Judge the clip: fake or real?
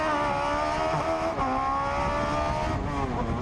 real